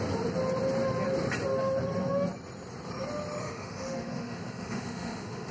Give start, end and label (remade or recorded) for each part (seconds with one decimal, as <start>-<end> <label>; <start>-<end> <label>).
0.0-3.4 recorded; 3.4-5.5 remade